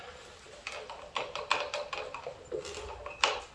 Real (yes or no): yes